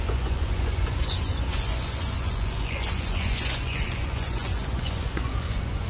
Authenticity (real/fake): fake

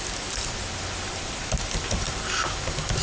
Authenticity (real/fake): real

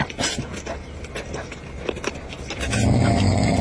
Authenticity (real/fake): real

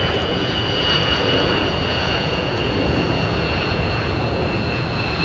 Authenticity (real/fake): fake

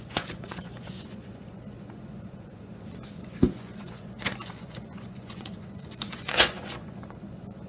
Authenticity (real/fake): fake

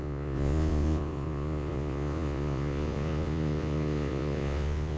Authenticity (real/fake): fake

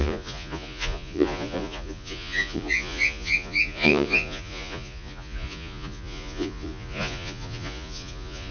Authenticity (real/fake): fake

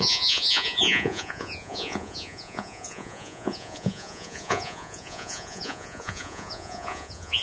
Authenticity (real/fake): fake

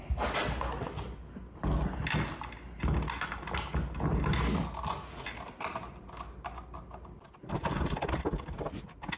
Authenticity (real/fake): real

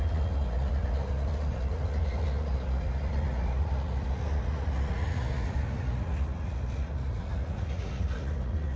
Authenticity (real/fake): fake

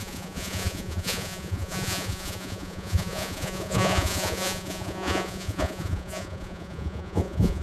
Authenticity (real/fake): fake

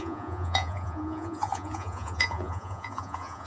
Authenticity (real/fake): fake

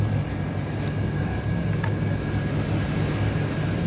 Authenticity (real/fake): real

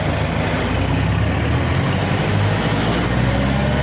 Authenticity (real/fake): real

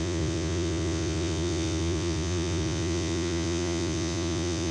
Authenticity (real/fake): fake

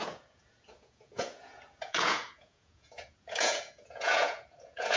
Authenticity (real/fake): fake